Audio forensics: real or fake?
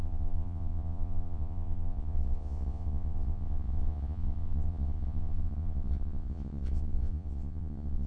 fake